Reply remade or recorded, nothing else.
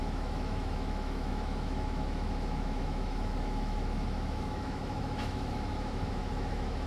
remade